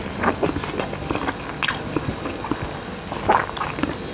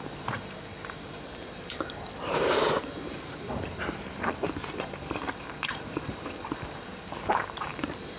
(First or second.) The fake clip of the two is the second